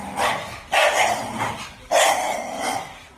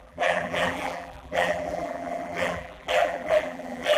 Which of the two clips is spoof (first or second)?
second